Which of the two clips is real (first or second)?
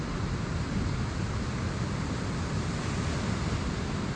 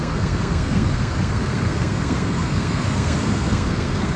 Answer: first